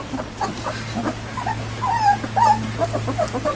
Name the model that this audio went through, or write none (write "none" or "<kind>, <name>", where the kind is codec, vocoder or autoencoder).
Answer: none